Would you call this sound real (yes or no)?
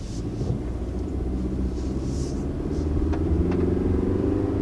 yes